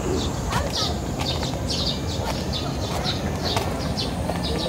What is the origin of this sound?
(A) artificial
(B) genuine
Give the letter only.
B